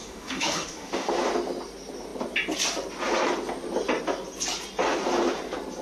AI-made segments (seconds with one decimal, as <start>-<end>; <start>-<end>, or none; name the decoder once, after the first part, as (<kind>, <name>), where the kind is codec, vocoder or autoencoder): 0.0-1.1 (autoencoder, DAC-VAE)